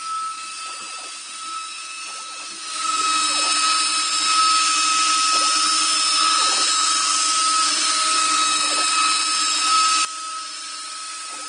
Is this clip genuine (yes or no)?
yes